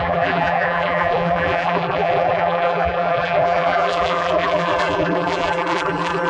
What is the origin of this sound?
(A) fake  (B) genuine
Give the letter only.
A